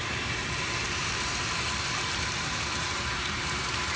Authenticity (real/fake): fake